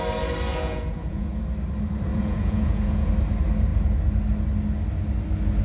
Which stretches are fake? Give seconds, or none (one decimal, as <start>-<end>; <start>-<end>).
0.5-1.4; 2.1-3.1